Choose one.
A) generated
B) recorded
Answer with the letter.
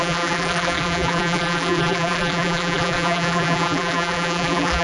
A